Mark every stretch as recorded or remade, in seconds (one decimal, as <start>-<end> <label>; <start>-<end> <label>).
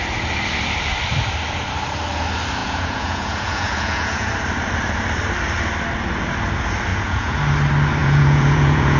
0.0-2.6 recorded; 2.6-4.3 remade; 4.3-6.9 recorded; 6.9-7.4 remade; 7.4-8.0 recorded; 8.0-9.0 remade